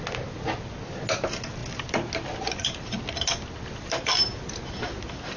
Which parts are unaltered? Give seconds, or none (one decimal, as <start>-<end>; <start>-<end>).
0.0-5.4

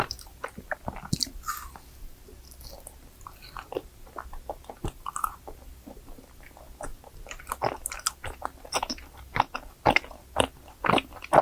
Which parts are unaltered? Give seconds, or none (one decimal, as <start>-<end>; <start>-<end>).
0.0-11.4

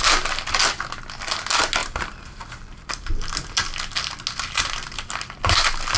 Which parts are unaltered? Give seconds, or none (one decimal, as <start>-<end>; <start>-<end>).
0.0-6.0

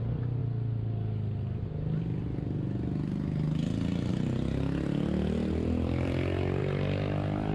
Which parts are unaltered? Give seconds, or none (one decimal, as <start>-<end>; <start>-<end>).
0.0-7.5

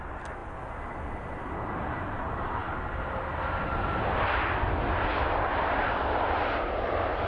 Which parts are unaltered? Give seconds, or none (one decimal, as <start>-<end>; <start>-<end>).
0.0-7.3

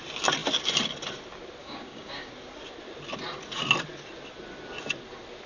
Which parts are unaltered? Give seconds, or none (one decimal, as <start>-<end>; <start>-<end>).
0.0-1.6; 2.3-5.5